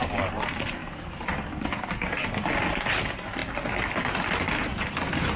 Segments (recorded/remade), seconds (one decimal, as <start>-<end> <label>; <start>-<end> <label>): 0.0-5.4 recorded